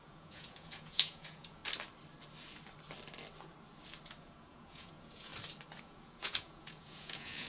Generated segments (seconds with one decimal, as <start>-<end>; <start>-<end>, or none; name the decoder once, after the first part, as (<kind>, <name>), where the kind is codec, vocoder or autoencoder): 0.0-1.6 (vocoder, Vocos); 4.2-5.3; 5.8-7.5